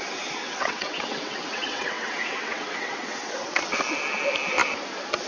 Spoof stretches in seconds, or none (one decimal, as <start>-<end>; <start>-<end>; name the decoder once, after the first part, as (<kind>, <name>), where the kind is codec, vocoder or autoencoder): 0.4-3.6 (vocoder, WaveNeXt)